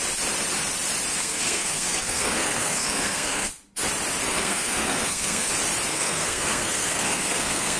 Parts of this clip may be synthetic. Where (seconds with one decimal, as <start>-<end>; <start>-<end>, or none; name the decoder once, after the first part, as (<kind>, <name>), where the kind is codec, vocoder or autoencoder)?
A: 1.2-3.5 (codec, SNAC); 4.3-5.5; 5.9-7.8